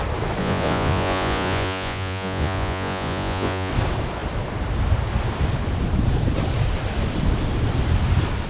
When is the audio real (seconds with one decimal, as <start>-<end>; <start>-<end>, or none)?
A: 0.0-0.4; 3.7-8.5